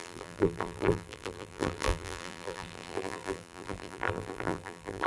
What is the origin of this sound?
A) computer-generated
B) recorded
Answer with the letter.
A